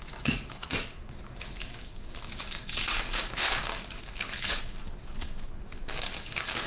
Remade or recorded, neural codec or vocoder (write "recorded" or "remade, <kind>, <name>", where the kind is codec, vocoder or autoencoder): remade, codec, DAC